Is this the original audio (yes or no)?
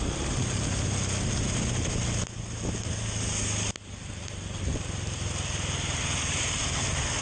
yes